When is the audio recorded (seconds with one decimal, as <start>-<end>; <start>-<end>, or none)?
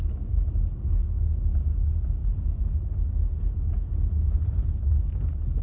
0.0-5.6